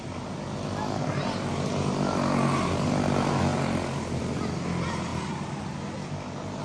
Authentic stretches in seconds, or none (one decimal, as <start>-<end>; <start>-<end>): 0.0-5.1; 5.8-6.6